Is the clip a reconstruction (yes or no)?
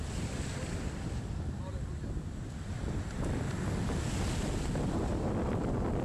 no